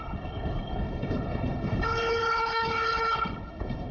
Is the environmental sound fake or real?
fake